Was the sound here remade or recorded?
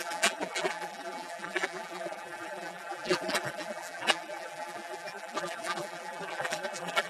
remade